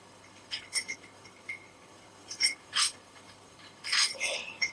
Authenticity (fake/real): fake